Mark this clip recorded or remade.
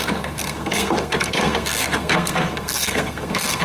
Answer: remade